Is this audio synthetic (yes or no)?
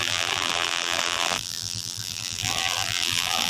yes